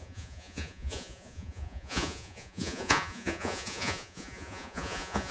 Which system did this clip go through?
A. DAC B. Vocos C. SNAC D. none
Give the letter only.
B